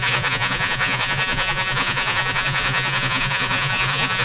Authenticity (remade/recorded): remade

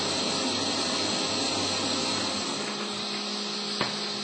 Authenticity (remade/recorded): recorded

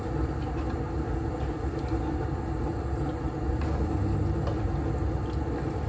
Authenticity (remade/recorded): recorded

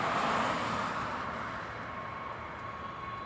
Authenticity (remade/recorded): recorded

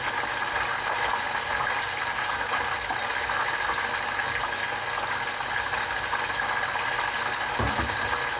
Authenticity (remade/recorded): recorded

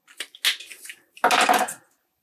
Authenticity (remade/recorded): recorded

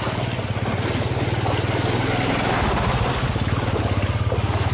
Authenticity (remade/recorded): recorded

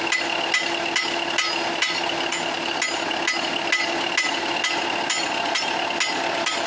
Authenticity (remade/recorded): recorded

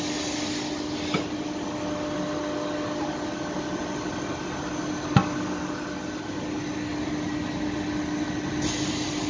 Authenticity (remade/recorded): recorded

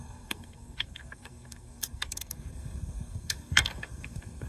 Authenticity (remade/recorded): remade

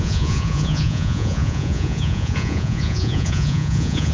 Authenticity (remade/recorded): remade